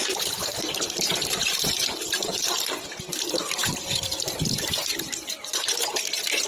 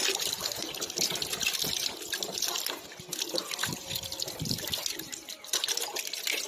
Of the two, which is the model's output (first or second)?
first